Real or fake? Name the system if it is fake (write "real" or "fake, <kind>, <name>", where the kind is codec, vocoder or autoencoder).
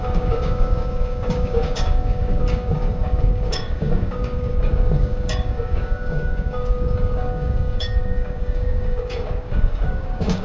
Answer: fake, codec, DAC